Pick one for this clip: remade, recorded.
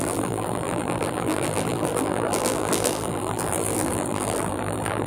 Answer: remade